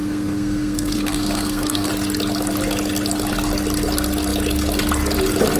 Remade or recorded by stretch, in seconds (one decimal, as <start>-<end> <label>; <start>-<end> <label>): 0.0-1.9 remade; 1.9-5.6 recorded

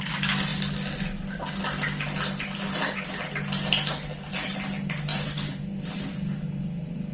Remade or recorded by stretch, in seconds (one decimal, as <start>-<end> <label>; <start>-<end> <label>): 0.0-7.1 recorded